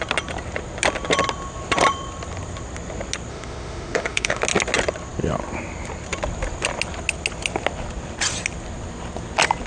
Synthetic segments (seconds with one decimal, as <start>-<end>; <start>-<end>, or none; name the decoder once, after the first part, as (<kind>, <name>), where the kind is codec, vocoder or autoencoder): 3.3-4.4 (autoencoder, DAC-VAE)